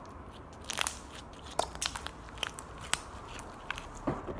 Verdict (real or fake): real